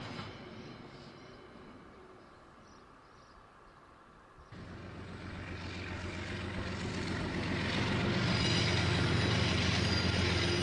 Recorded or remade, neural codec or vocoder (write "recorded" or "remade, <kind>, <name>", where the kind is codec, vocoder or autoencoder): recorded